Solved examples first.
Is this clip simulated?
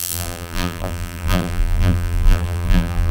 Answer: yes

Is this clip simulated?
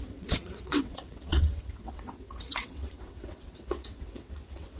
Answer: yes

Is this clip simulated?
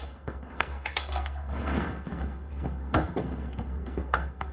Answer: yes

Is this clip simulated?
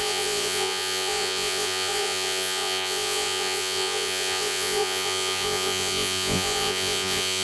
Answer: yes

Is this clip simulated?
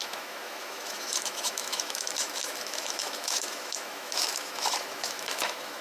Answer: yes